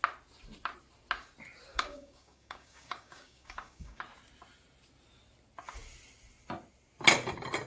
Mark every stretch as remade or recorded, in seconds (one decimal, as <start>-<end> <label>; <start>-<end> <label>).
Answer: 0.0-1.7 recorded; 1.7-4.0 remade; 4.0-7.7 recorded